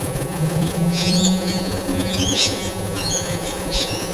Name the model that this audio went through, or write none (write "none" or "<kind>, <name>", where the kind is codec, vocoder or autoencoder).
vocoder, Vocos